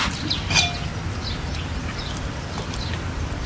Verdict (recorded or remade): recorded